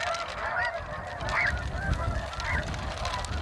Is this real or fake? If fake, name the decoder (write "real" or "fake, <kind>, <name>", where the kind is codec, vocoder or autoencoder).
real